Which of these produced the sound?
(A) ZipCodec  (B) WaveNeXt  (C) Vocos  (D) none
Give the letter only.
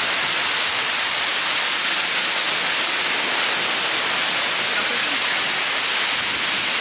D